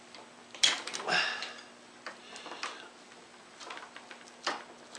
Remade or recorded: recorded